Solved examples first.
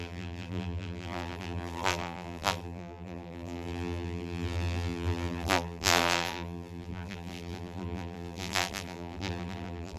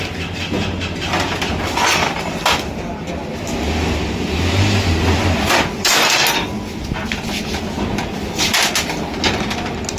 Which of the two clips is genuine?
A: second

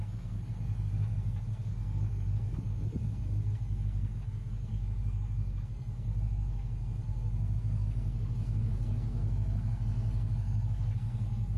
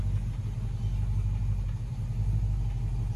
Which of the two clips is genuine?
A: second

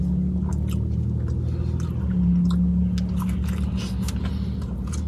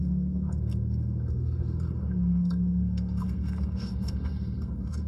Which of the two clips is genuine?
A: first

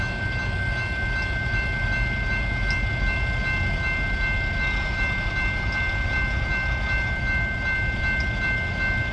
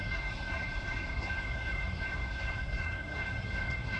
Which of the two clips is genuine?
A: first